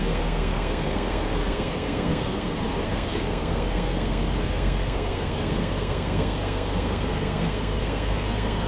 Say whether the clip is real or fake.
fake